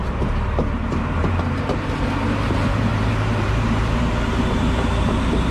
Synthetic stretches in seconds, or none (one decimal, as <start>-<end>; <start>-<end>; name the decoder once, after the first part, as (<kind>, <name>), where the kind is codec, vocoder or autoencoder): 0.0-5.5 (vocoder, BigVGAN v2)